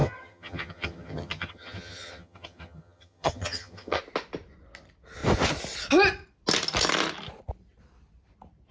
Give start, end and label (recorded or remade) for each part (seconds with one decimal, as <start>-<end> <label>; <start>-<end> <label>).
0.0-4.0 remade; 4.0-8.7 recorded